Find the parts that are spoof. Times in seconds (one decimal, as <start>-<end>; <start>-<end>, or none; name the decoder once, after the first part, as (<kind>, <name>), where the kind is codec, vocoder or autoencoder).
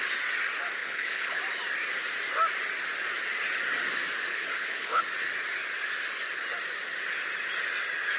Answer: 0.8-1.4 (codec, HILCodec); 4.3-5.0